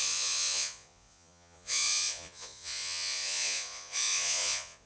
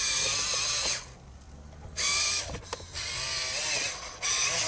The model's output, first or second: first